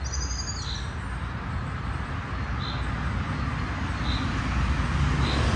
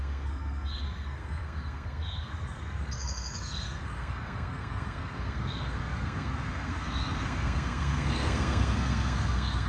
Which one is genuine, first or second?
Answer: first